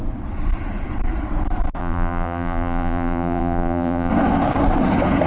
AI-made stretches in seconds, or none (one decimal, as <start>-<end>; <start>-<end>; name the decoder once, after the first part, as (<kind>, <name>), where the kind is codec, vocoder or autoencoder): 1.8-4.1 (vocoder, BigVGAN v2)